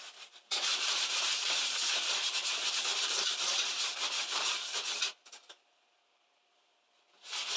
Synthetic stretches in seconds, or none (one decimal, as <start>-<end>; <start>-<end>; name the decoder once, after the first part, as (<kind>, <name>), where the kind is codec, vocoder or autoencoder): 0.5-2.2 (vocoder, BigVGAN v2); 2.9-6.9

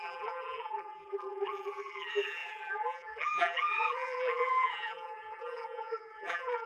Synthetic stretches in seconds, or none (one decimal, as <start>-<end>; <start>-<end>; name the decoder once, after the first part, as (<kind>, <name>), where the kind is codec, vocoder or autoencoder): 0.0-6.7 (vocoder, BigVGAN v2)

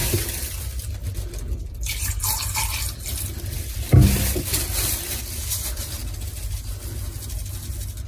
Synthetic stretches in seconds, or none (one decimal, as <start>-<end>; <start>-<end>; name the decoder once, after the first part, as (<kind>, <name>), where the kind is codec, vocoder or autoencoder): 0.0-4.5 (vocoder, BigVGAN v2); 5.4-6.0